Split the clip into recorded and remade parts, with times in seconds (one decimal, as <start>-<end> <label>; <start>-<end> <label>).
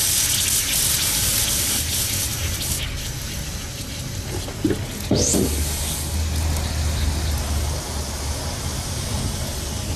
0.0-10.0 recorded